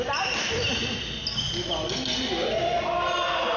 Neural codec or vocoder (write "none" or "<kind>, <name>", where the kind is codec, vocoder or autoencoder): none